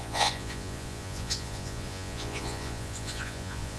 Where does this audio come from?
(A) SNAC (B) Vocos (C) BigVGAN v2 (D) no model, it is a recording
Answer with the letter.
B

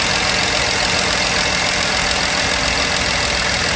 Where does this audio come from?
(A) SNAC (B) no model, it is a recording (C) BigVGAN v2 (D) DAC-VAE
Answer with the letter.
B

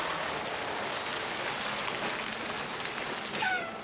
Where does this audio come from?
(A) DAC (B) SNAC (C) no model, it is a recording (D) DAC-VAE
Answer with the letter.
C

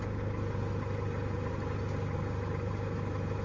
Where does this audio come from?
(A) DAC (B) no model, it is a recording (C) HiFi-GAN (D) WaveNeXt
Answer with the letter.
B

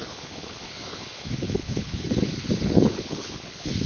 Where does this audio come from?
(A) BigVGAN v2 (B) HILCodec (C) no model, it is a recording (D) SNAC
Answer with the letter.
B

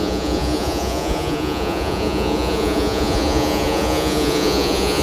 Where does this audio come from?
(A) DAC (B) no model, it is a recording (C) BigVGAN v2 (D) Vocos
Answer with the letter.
D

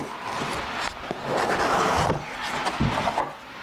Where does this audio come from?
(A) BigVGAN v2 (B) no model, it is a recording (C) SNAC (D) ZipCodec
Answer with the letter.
B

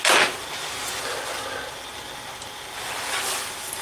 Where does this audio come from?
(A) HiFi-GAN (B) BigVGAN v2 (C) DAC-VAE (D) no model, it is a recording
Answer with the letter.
D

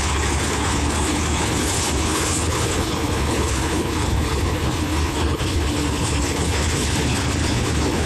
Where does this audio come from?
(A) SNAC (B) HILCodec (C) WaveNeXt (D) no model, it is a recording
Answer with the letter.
B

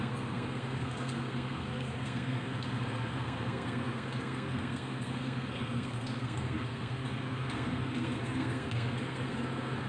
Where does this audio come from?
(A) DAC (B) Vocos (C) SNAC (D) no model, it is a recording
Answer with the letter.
C